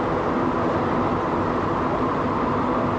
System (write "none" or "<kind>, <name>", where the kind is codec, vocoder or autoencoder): none